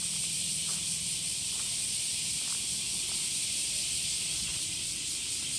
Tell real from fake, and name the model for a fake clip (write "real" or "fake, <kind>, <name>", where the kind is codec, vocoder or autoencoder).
real